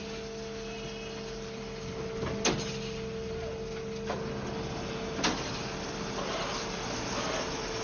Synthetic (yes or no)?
no